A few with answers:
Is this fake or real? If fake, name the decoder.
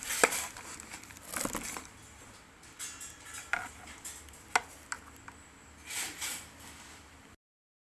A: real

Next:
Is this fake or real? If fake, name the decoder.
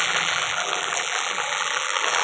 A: fake, vocoder, BigVGAN v2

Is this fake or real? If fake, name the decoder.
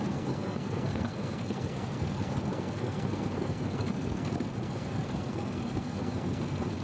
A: fake, codec, SNAC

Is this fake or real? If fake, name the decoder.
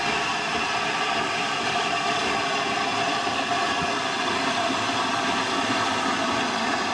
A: fake, vocoder, BigVGAN v2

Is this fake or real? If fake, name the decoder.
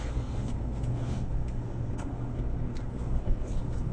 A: fake, codec, SNAC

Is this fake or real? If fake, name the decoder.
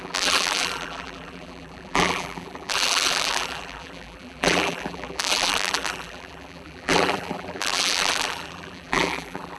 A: fake, vocoder, BigVGAN v2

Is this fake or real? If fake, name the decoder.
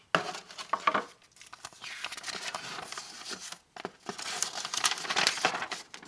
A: real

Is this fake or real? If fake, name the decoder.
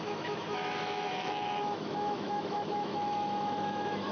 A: fake, autoencoder, DAC-VAE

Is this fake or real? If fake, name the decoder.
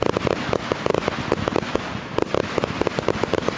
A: fake, vocoder, BigVGAN v2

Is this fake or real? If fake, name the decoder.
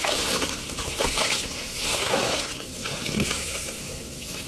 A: fake, codec, SNAC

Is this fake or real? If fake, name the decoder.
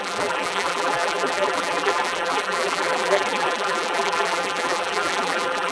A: fake, vocoder, BigVGAN v2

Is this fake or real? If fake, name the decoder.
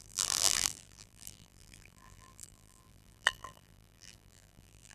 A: fake, vocoder, BigVGAN v2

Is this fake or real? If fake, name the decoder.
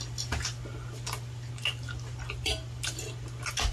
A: real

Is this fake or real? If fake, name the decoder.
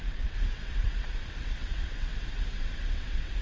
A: fake, vocoder, WaveNeXt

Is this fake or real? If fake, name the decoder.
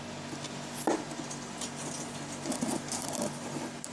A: real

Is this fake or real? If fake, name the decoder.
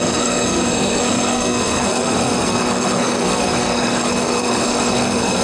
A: fake, codec, SNAC